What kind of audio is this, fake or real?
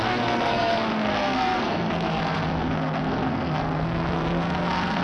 fake